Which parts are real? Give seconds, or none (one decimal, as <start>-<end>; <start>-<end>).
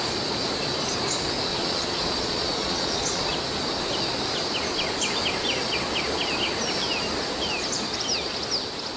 0.0-1.5; 3.2-9.0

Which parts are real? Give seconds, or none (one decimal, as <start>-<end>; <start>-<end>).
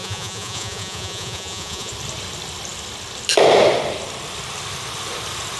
1.9-5.6